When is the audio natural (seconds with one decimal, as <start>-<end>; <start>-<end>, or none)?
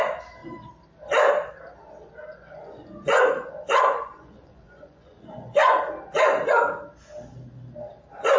0.0-2.3; 5.8-8.4